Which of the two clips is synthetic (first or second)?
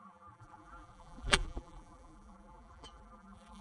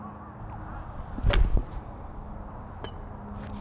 first